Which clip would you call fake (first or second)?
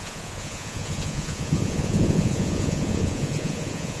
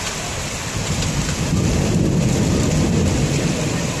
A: first